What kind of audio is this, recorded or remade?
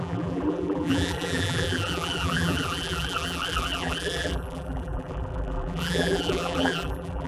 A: remade